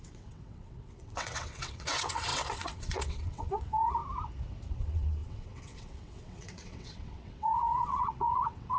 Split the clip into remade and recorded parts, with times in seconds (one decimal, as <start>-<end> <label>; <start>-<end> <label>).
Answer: 0.0-4.0 remade; 4.0-4.7 recorded; 4.7-8.8 remade